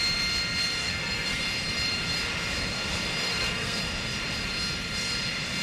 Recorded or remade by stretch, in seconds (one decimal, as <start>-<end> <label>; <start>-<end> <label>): 0.0-0.8 recorded; 0.8-1.4 remade; 1.4-3.3 recorded; 3.3-3.8 remade; 3.8-5.6 recorded